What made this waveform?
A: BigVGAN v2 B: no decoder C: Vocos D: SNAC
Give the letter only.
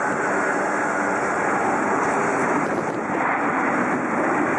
B